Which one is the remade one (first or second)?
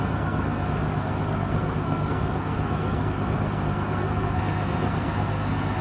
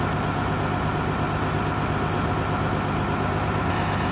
first